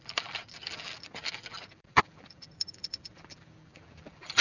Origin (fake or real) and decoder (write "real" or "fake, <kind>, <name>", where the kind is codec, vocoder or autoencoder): fake, vocoder, BigVGAN v2